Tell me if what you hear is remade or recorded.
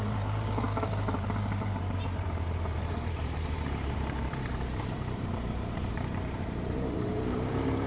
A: remade